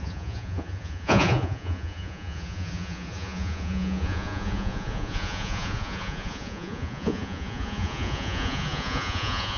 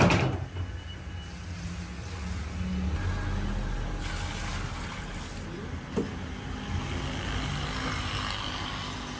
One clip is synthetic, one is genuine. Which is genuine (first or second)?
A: second